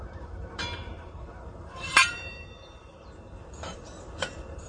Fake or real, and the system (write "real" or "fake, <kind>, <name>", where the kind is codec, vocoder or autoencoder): fake, vocoder, BigVGAN v2